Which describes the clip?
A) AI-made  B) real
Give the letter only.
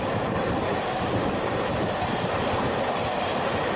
A